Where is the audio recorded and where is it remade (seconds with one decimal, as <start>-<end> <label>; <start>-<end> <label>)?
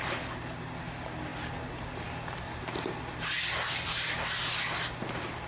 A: 0.0-5.5 recorded